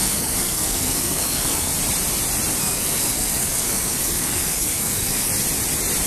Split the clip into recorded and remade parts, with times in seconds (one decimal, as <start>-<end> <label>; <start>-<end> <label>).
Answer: 0.0-1.7 remade; 1.7-2.6 recorded; 2.6-5.3 remade; 5.3-6.1 recorded